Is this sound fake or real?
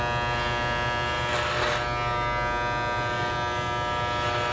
real